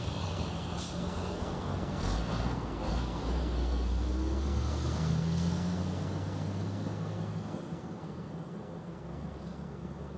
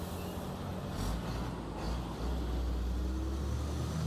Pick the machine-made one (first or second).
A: first